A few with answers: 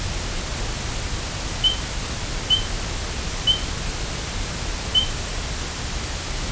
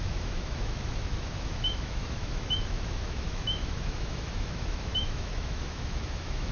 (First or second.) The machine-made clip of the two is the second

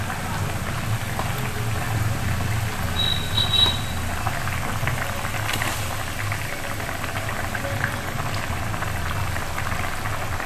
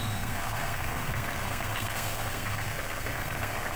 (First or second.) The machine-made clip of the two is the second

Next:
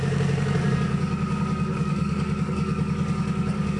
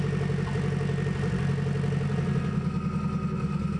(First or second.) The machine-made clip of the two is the first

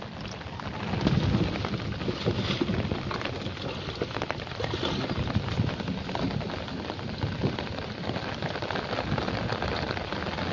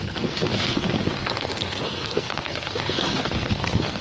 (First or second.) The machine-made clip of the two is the second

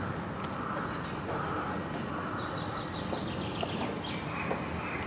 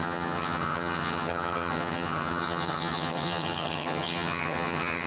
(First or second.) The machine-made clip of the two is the second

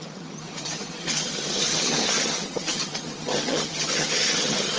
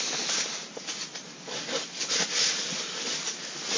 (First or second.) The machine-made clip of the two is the first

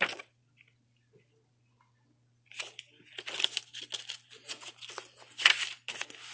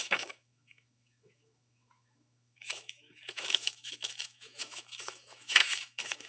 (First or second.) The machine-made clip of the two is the second